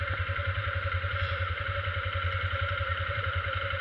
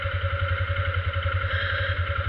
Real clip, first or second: second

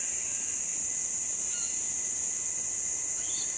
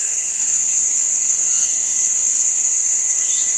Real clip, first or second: first